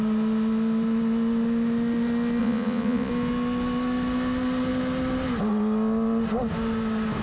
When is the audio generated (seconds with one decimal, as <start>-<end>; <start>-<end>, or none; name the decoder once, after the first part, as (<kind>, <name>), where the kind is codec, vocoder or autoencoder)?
2.4-3.1 (vocoder, Vocos)

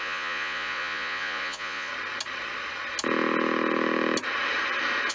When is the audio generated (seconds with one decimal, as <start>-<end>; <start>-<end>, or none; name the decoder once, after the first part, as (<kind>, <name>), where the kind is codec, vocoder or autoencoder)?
0.0-1.9 (vocoder, Vocos)

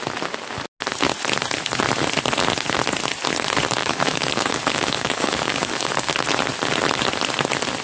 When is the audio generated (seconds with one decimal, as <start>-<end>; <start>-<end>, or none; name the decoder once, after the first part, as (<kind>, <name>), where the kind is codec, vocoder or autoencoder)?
3.8-6.1 (codec, DAC)

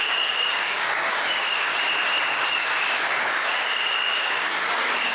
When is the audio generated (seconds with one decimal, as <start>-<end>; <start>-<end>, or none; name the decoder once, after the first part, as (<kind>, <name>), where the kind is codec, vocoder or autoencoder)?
0.0-1.7 (codec, DAC); 2.6-5.1